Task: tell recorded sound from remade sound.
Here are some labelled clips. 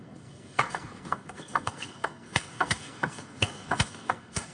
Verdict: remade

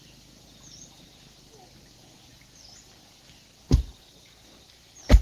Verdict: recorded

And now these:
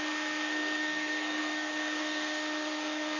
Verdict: remade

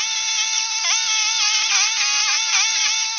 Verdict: recorded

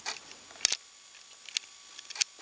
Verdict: recorded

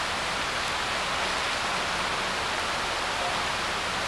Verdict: recorded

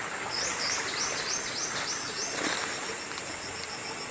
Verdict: recorded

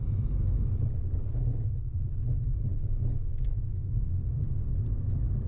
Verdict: recorded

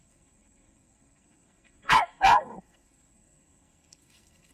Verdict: remade